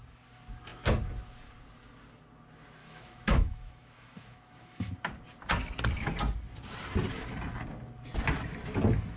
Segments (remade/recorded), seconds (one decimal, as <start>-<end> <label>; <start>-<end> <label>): 0.0-2.8 recorded; 2.8-4.9 remade; 4.9-9.2 recorded